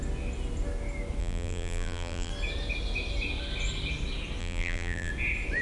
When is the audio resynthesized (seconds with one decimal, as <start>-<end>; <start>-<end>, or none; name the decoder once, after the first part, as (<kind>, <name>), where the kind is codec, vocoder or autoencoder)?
1.2-2.3 (vocoder, BigVGAN v2); 4.4-5.1